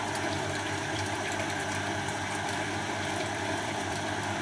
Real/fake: fake